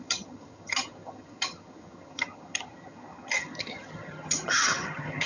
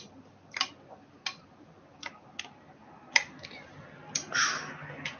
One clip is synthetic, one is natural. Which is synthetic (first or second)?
first